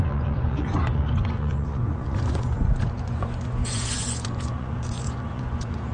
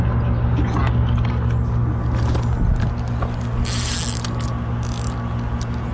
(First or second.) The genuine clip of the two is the second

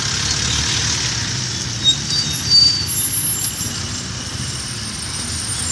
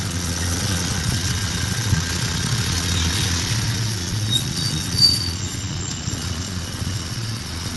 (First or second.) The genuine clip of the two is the first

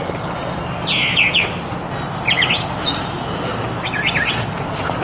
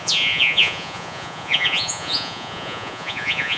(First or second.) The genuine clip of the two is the first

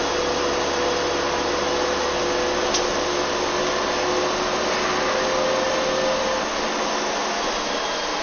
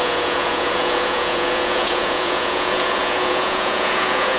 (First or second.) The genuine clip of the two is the first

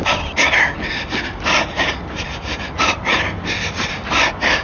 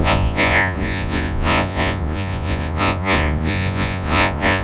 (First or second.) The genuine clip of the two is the first